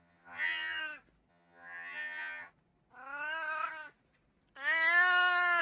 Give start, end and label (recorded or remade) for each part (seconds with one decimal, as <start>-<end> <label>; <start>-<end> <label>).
0.0-0.8 remade; 0.8-1.3 recorded; 1.3-2.5 remade; 2.5-5.6 recorded

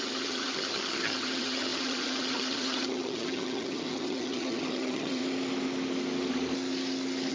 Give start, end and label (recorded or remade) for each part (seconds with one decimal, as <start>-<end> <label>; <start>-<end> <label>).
0.0-5.2 remade; 5.2-7.3 recorded

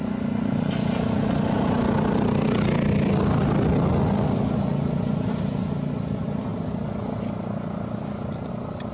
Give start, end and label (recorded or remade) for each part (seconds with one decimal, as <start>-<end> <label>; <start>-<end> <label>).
0.0-8.9 recorded

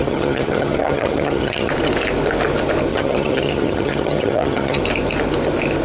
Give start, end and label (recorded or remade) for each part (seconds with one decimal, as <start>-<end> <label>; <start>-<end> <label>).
0.0-1.7 remade; 1.7-2.9 recorded; 2.9-4.8 remade; 4.8-5.8 recorded

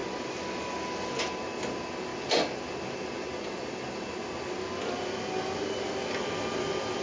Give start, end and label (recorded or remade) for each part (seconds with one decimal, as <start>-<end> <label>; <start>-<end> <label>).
0.0-7.0 recorded

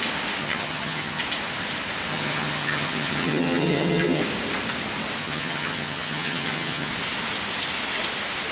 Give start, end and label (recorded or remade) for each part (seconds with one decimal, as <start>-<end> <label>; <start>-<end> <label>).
0.0-0.4 recorded; 0.4-1.2 remade; 1.2-2.1 recorded; 2.1-4.2 remade; 4.2-5.2 recorded; 5.2-6.9 remade; 6.9-8.5 recorded

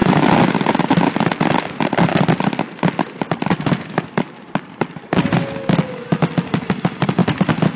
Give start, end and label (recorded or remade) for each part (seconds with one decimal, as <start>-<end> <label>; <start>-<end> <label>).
0.0-7.8 recorded